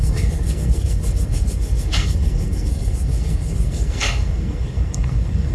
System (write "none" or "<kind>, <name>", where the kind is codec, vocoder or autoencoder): codec, SNAC